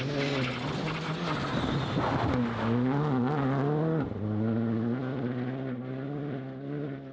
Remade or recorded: recorded